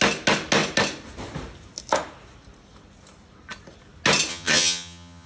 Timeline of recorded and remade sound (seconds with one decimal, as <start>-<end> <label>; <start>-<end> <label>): 0.0-4.3 recorded; 4.3-5.3 remade

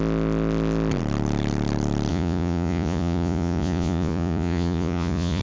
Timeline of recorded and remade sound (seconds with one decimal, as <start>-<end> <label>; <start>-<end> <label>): 0.0-2.1 recorded; 2.1-5.4 remade

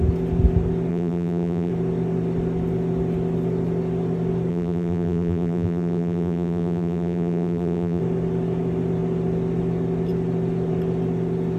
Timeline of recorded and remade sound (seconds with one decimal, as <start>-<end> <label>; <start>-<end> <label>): 0.0-0.9 recorded; 0.9-1.7 remade; 1.7-4.5 recorded; 4.5-8.0 remade; 8.0-11.6 recorded

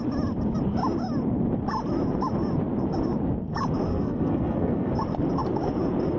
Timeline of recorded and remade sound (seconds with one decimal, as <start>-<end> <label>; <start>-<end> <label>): 0.0-3.9 recorded; 3.9-4.9 remade; 4.9-6.2 recorded

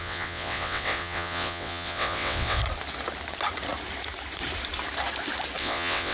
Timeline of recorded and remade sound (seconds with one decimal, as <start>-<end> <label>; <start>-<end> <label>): 0.0-2.6 remade; 2.6-5.6 recorded; 5.6-6.1 remade

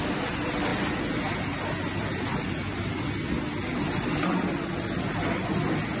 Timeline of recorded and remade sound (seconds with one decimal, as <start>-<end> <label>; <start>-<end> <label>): 0.0-6.0 recorded

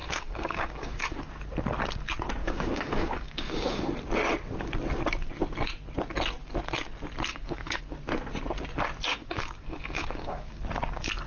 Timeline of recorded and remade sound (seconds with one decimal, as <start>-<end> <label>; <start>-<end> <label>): 0.0-1.2 remade; 1.2-2.4 recorded; 2.4-3.9 remade; 3.9-7.3 recorded; 7.3-7.8 remade; 7.8-9.1 recorded; 9.1-10.6 remade; 10.6-11.3 recorded